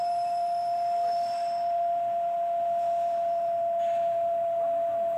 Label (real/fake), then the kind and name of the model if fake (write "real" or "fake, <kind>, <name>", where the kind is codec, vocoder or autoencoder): real